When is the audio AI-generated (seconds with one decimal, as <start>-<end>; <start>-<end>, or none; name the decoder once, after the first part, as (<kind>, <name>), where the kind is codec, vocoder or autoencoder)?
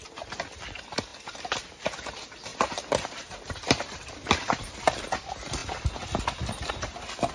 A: 2.5-4.7 (vocoder, BigVGAN v2)